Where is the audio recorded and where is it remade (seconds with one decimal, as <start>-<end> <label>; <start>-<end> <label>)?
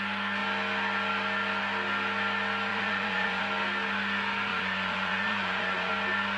0.0-2.7 recorded; 2.7-3.4 remade; 3.4-4.5 recorded; 4.5-5.9 remade; 5.9-6.4 recorded